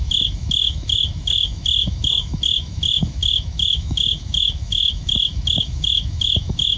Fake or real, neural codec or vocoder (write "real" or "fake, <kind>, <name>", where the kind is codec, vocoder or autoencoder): fake, autoencoder, DAC-VAE